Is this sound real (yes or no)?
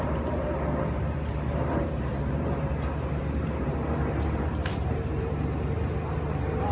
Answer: no